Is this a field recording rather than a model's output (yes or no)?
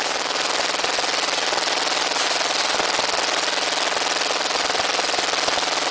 yes